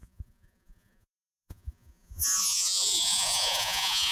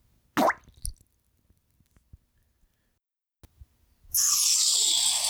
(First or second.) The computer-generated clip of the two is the first